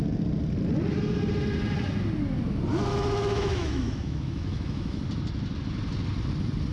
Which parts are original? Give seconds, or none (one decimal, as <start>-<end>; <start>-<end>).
0.0-2.7; 5.0-6.7